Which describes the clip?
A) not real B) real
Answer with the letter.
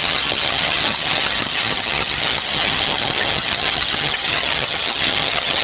A